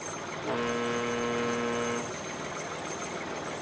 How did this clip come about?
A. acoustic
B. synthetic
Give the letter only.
A